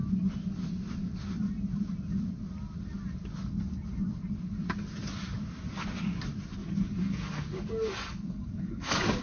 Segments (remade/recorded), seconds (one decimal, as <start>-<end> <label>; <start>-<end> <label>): 0.0-6.6 recorded; 6.6-9.2 remade